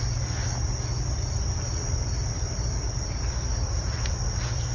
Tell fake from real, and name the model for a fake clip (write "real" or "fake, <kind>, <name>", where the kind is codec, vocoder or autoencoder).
real